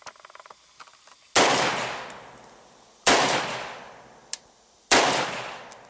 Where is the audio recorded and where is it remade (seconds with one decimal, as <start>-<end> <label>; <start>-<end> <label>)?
0.0-5.9 recorded